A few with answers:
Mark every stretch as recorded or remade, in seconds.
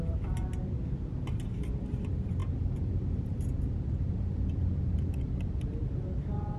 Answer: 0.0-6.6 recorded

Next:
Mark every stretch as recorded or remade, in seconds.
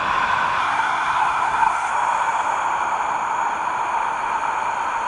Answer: 0.0-0.6 recorded; 0.6-1.9 remade; 1.9-5.1 recorded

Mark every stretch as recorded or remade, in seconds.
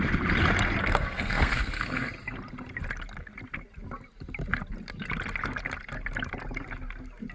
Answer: 0.0-0.8 recorded; 0.8-2.1 remade; 2.1-7.3 recorded